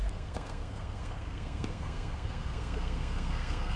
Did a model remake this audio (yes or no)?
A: yes